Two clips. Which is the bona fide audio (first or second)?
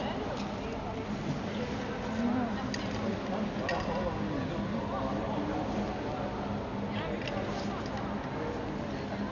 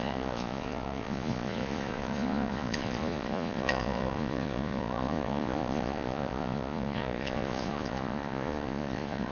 first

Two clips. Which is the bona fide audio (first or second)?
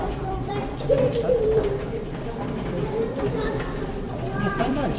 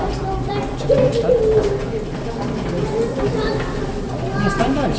second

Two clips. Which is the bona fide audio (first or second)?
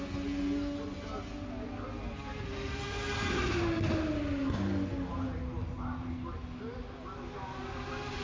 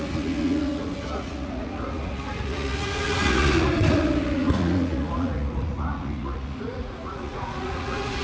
first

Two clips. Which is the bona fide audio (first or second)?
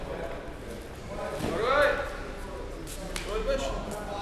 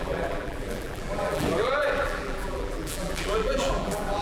first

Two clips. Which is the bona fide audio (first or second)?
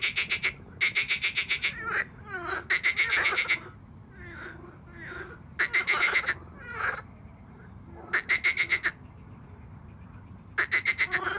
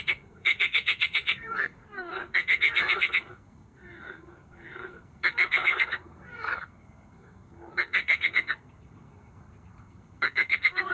first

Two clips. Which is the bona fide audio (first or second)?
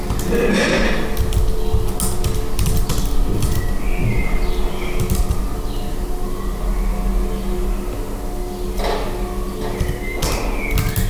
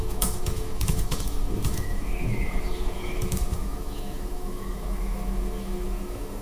first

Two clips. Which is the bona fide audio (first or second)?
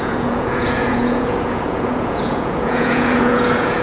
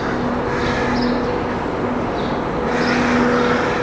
second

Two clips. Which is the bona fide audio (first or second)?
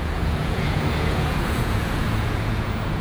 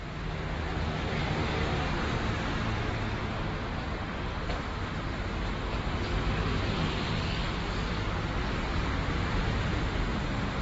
second